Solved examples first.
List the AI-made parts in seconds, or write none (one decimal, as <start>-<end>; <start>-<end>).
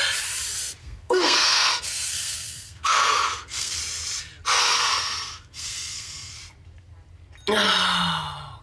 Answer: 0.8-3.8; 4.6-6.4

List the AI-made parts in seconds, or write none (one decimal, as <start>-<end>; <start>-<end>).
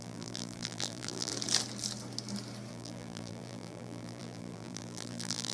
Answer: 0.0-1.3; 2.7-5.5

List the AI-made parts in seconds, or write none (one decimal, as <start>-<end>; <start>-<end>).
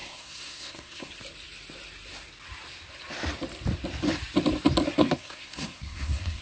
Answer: 0.0-1.1; 5.0-6.4